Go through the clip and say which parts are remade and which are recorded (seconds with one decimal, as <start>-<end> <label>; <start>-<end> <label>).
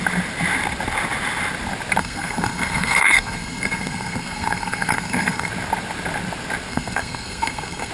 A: 0.0-2.0 recorded; 2.0-5.5 remade; 5.5-6.7 recorded; 6.7-7.9 remade